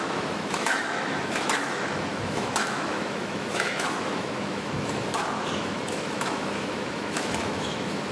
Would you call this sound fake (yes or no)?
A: yes